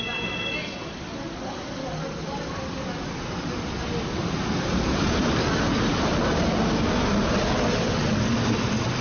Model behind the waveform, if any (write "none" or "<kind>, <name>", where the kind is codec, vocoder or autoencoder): none